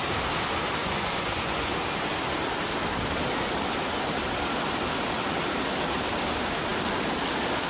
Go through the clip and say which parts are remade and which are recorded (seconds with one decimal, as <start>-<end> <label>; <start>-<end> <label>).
0.0-0.8 recorded; 0.8-1.7 remade; 1.7-7.7 recorded